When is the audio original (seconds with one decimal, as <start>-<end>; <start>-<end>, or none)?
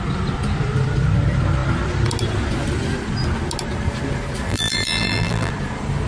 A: 0.0-4.5; 5.5-6.1